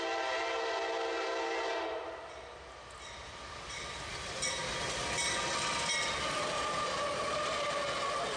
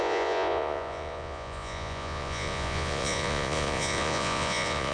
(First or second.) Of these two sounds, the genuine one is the first